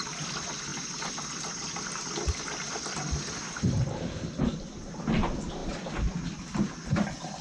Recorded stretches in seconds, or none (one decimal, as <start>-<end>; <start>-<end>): 0.0-7.4